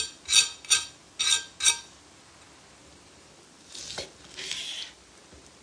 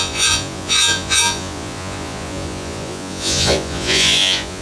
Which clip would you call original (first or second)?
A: first